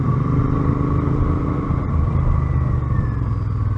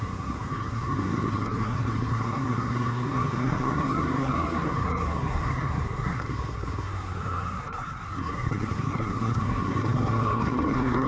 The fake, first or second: second